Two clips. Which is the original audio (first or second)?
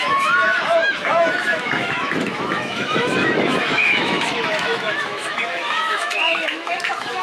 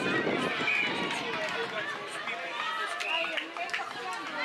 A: second